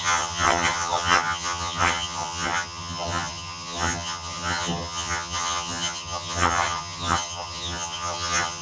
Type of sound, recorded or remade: remade